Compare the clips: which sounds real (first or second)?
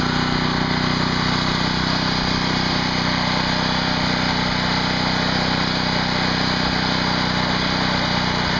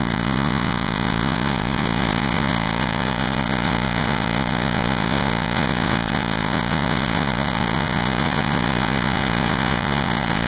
first